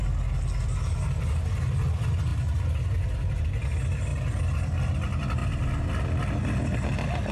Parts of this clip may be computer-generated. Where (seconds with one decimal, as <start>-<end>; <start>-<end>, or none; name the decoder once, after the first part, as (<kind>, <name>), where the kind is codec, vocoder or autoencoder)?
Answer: none